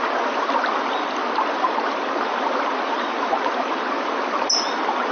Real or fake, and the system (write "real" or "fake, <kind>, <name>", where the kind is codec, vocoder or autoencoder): real